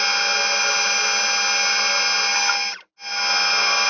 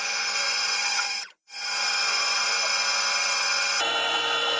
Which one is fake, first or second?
second